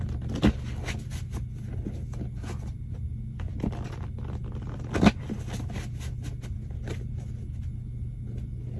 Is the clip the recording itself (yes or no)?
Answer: yes